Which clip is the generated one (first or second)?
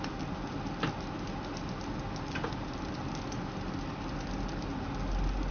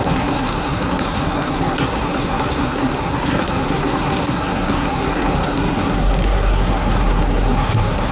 second